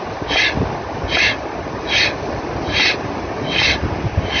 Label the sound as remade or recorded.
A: recorded